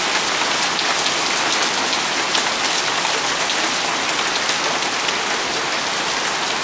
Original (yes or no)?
yes